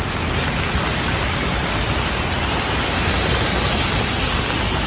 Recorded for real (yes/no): yes